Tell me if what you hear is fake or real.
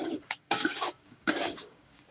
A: fake